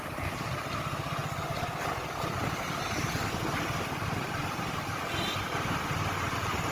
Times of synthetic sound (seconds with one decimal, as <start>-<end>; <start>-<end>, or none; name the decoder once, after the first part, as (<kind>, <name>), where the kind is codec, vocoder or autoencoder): none